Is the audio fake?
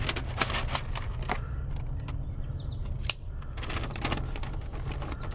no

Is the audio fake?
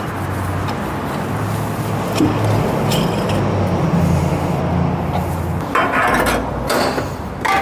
no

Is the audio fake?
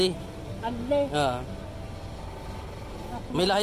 no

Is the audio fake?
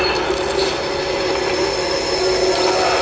no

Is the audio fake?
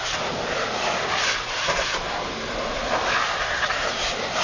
no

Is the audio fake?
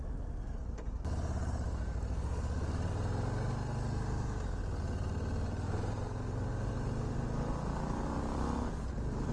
no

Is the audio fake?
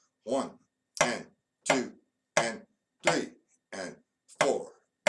no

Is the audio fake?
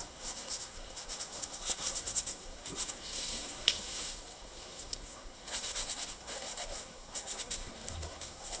yes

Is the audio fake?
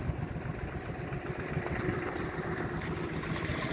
no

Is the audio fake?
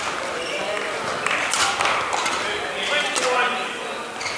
no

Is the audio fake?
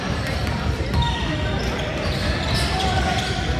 no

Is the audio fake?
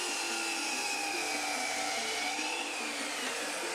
no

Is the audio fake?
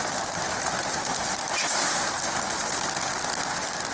no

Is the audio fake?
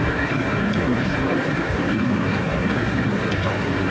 yes